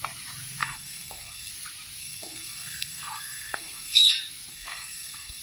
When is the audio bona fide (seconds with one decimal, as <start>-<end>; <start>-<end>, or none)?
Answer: 0.0-0.6; 1.5-2.0; 4.1-4.5